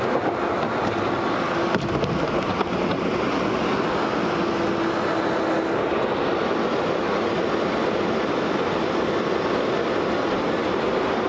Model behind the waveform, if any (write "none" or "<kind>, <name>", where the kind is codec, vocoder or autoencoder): none